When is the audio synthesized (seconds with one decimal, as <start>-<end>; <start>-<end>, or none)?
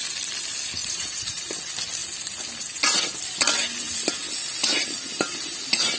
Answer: 0.8-1.4